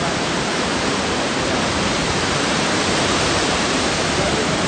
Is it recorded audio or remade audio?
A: remade